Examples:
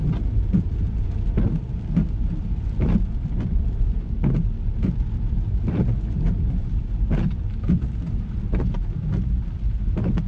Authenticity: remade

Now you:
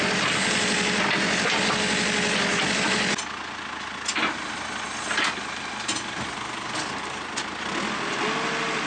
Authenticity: recorded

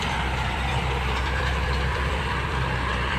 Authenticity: remade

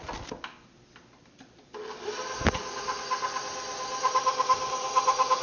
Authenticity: recorded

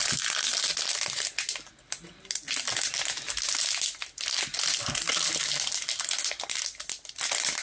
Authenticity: recorded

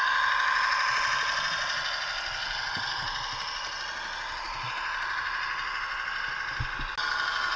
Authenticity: recorded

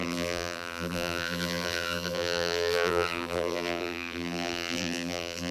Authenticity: remade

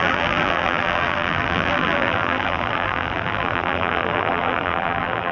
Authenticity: remade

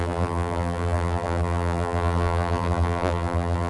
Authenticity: remade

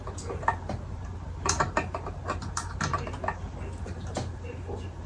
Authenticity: recorded